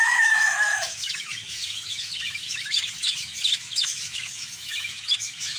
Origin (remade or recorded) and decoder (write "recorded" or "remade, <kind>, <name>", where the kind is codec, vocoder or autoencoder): remade, autoencoder, DAC-VAE